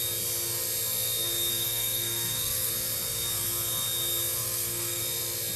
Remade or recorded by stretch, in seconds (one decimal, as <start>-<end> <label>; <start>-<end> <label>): 0.0-1.5 recorded; 1.5-2.7 remade; 2.7-4.4 recorded; 4.4-5.0 remade; 5.0-5.6 recorded